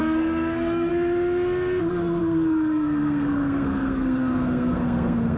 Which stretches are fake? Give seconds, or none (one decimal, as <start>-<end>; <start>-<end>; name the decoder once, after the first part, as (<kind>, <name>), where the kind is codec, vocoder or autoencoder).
0.0-0.9 (codec, SNAC); 2.2-5.4